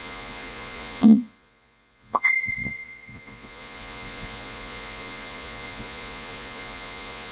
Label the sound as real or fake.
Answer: fake